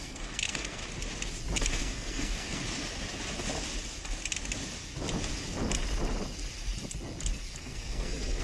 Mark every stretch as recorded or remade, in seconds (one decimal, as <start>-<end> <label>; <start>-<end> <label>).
0.0-0.8 remade; 0.8-1.7 recorded; 1.7-2.6 remade; 2.6-7.6 recorded; 7.6-8.4 remade